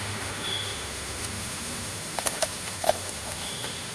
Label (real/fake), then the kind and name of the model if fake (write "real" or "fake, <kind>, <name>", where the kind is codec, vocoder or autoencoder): fake, autoencoder, DAC-VAE